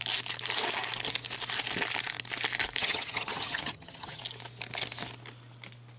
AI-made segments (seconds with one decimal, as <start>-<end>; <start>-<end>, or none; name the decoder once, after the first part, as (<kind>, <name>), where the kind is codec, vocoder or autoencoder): 2.8-4.2 (vocoder, HiFi-GAN)